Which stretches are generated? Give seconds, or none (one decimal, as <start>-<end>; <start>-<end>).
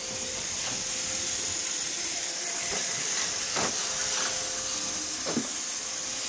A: 1.6-4.3